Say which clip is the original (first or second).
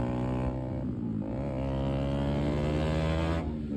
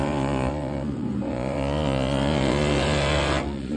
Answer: first